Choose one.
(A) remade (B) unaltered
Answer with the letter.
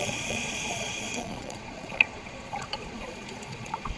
A